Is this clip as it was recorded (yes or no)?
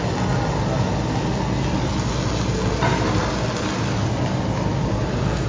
yes